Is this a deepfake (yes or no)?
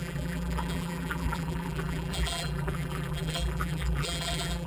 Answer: yes